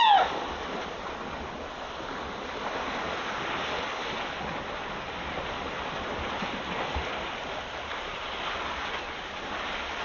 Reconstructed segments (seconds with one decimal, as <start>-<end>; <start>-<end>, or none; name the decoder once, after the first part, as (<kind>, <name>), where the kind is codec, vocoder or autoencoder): none